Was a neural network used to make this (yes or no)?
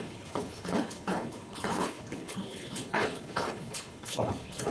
yes